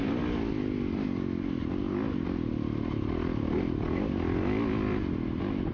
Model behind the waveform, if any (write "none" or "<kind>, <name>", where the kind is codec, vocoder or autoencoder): none